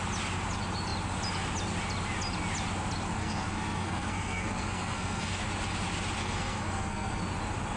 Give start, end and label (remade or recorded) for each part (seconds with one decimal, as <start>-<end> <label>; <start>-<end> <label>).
0.0-3.2 recorded; 3.2-5.4 remade; 5.4-6.2 recorded; 6.2-7.2 remade; 7.2-7.8 recorded